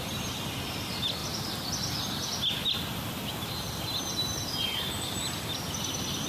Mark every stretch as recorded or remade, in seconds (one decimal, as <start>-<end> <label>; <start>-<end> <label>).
0.0-6.3 recorded